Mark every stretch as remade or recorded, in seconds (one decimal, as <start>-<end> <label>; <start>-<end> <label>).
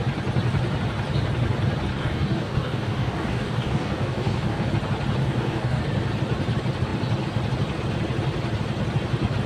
0.0-1.9 recorded; 1.9-4.7 remade; 4.7-5.2 recorded; 5.2-5.8 remade; 5.8-9.5 recorded